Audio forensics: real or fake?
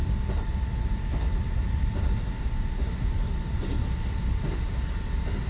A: real